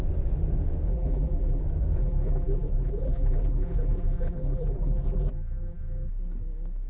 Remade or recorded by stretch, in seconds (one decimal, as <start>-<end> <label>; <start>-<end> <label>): 0.0-0.9 recorded; 0.9-1.6 remade; 1.6-2.0 recorded; 2.0-6.1 remade; 6.1-6.9 recorded